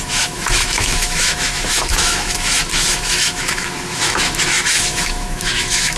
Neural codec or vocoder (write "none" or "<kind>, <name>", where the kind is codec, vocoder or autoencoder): autoencoder, DAC-VAE